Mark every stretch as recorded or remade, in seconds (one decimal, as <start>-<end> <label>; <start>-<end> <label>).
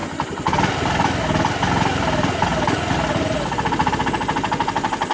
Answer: 0.0-5.1 recorded